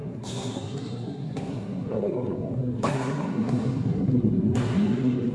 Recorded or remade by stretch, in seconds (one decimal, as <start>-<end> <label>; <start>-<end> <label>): 0.0-5.3 remade